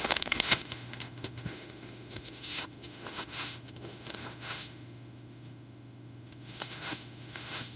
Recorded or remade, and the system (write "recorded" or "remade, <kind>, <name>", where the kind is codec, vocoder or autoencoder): remade, autoencoder, DAC-VAE